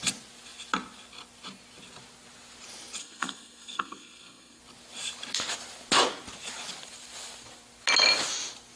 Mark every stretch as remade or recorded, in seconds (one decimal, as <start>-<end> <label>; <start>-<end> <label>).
0.0-3.0 recorded; 3.0-4.6 remade; 4.6-8.8 recorded